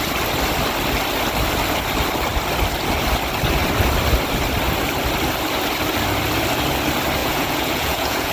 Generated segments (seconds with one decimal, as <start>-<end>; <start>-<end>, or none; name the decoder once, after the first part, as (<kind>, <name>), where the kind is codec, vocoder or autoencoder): 7.2-8.3 (vocoder, Vocos)